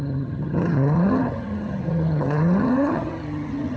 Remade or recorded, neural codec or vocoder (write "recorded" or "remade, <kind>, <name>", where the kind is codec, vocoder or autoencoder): remade, vocoder, HiFi-GAN